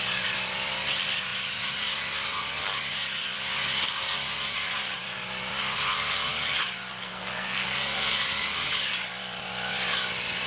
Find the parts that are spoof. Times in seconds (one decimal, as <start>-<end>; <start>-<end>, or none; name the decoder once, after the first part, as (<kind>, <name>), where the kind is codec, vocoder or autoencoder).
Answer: 7.0-8.2 (codec, SNAC)